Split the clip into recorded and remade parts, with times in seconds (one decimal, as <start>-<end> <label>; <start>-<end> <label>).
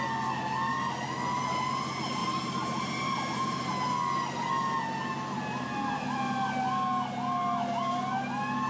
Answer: 0.0-2.2 recorded; 2.2-3.7 remade; 3.7-8.7 recorded